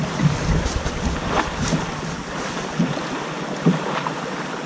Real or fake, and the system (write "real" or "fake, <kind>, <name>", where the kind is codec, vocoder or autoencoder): real